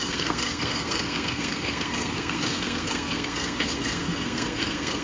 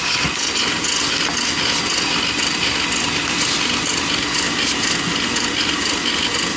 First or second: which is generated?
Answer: first